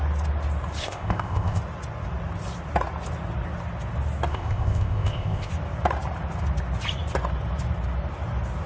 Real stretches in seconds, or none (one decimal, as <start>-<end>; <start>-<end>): 0.0-0.8; 1.6-4.3; 5.5-8.7